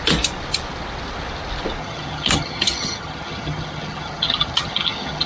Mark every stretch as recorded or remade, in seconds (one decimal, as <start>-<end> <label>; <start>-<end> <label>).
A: 0.0-1.8 recorded; 1.8-5.3 remade